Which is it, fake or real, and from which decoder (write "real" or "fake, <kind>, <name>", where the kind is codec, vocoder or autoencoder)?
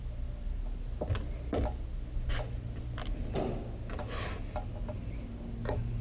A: real